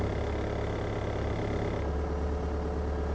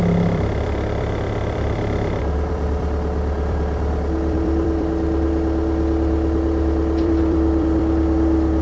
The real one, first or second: first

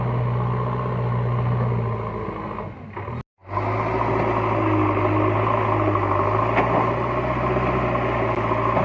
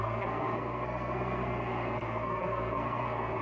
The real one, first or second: first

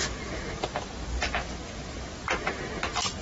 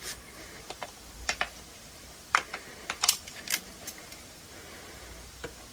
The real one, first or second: first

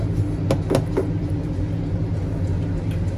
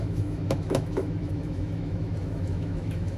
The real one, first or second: first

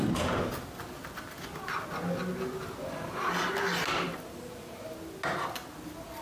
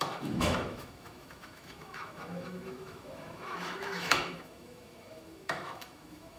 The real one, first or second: first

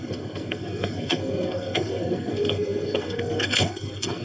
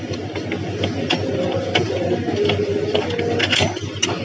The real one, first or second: second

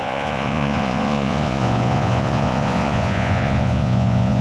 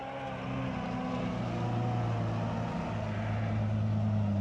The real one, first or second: second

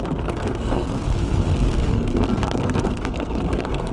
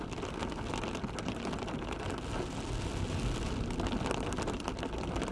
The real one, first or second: second